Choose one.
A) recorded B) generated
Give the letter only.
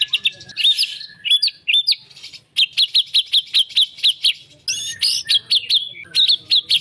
A